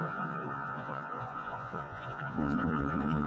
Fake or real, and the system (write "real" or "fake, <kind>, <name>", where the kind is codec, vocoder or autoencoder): fake, vocoder, Vocos